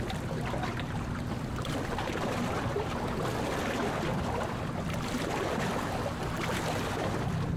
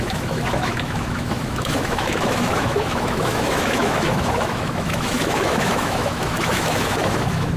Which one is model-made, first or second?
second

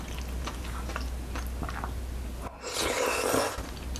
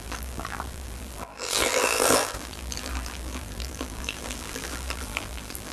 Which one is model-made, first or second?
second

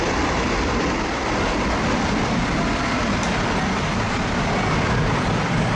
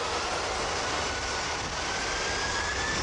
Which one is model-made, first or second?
first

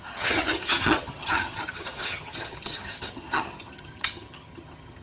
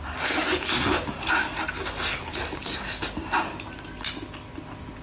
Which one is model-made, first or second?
first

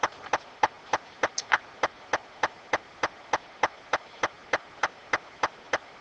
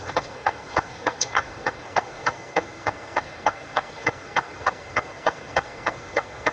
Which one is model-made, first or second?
second